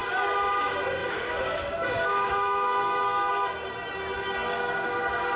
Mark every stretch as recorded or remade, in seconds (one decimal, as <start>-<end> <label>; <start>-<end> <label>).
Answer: 0.0-1.0 recorded; 1.0-3.3 remade; 3.3-4.5 recorded; 4.5-5.4 remade